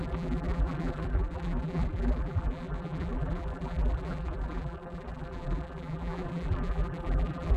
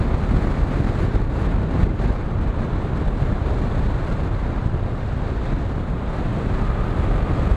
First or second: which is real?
second